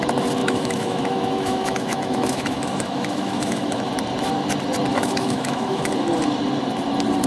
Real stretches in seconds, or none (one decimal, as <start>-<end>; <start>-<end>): 0.0-0.4; 3.9-4.9; 5.9-7.3